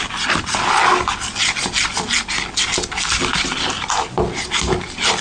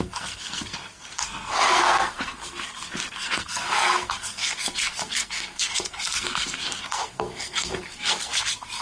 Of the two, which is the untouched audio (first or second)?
first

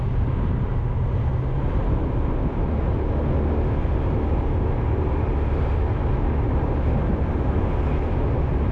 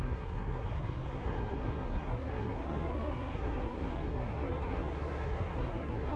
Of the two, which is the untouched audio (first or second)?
first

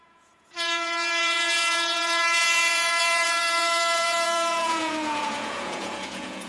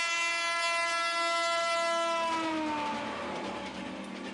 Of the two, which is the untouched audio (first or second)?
second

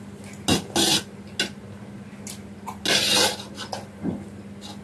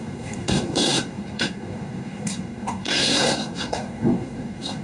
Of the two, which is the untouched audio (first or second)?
first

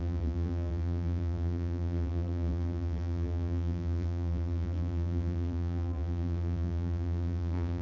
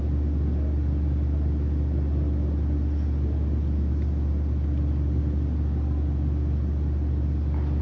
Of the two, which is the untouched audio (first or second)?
second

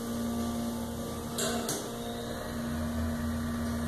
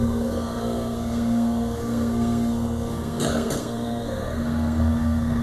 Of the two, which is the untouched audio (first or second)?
first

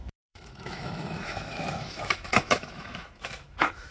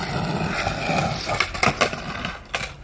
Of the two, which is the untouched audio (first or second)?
second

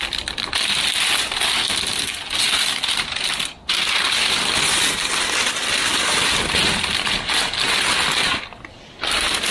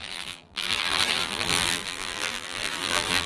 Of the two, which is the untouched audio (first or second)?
first